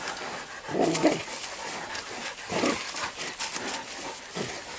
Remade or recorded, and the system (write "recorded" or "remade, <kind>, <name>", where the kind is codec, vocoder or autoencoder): recorded